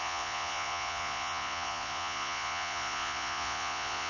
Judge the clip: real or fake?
fake